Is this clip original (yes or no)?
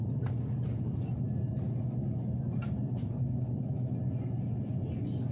yes